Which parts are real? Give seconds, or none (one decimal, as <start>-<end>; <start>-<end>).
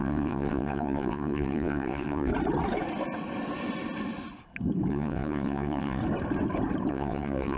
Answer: 2.3-4.9; 6.0-6.9